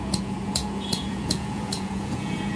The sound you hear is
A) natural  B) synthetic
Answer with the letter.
B